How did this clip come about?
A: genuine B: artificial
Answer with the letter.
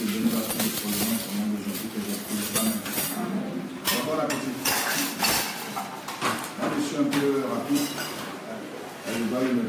A